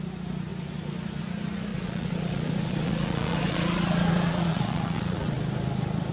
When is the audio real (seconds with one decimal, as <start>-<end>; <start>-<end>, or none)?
0.0-1.7; 5.4-6.1